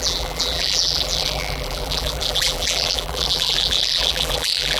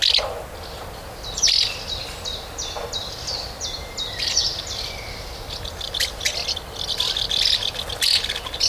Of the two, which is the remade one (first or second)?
first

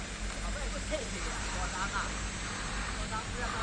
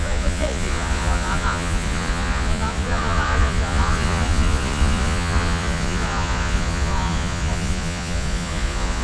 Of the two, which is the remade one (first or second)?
second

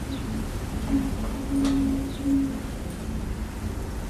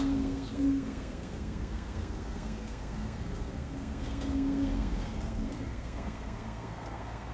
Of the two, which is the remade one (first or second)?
second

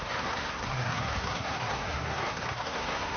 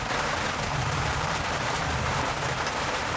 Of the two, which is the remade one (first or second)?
first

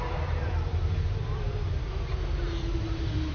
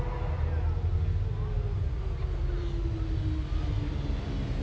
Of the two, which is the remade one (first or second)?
first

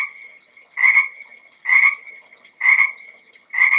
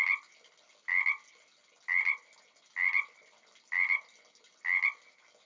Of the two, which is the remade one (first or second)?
first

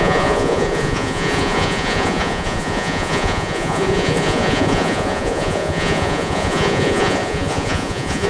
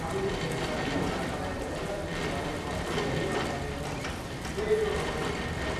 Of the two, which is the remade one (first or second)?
first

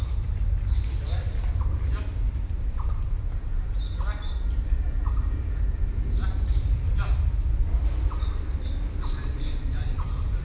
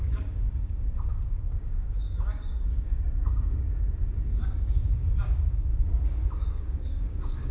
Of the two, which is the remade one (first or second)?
second